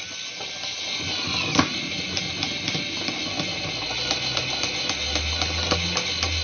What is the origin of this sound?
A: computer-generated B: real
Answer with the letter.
B